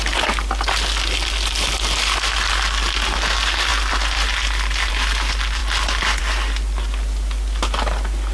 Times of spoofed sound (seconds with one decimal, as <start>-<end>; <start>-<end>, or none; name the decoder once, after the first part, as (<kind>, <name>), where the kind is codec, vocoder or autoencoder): none